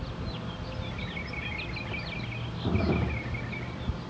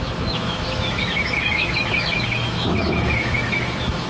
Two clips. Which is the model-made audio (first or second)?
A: second